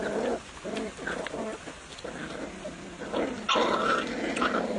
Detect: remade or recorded recorded